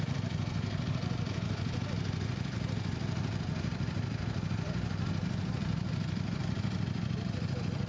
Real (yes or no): no